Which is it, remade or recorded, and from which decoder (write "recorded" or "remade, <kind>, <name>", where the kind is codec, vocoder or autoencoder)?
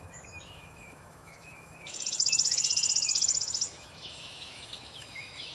remade, autoencoder, DAC-VAE